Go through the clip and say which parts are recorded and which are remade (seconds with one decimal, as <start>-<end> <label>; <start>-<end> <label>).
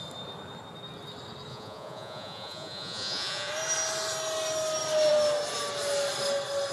0.0-1.5 recorded; 1.5-3.5 remade; 3.5-6.7 recorded